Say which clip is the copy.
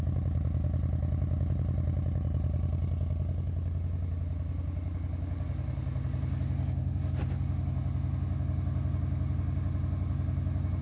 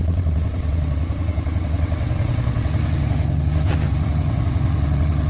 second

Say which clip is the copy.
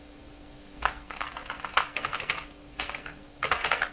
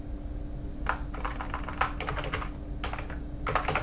first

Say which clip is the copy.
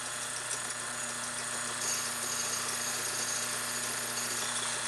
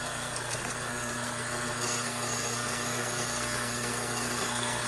second